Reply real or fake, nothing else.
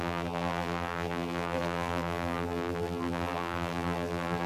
fake